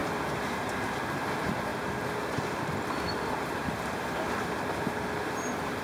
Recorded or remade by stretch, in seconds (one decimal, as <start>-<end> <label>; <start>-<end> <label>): 0.0-1.7 remade; 1.7-3.1 recorded; 3.1-5.8 remade